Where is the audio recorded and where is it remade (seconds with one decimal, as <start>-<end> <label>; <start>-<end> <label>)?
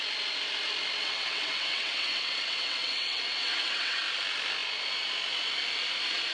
0.0-1.0 recorded; 1.0-4.0 remade; 4.0-6.3 recorded